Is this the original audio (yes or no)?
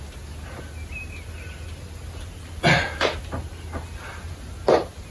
yes